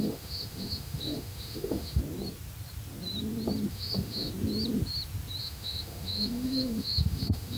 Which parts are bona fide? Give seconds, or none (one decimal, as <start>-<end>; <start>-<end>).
2.0-3.7; 4.3-5.4